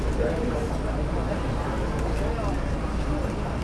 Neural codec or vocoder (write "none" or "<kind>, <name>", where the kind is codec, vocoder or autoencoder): none